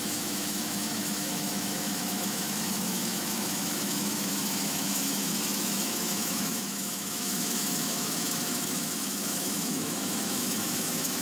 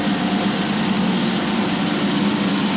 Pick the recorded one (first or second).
second